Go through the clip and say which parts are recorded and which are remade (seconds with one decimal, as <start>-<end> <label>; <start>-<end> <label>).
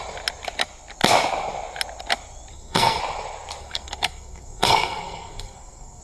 0.0-2.5 recorded; 2.5-3.0 remade; 3.0-3.6 recorded; 3.6-6.0 remade